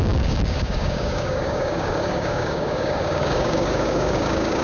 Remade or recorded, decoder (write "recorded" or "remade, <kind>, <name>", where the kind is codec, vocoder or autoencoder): remade, codec, DAC